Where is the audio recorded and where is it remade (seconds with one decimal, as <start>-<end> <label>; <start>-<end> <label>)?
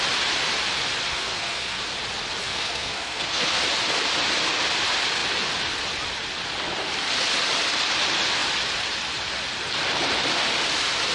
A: 0.0-1.1 recorded; 1.1-1.8 remade; 1.8-2.4 recorded; 2.4-3.5 remade; 3.5-11.1 recorded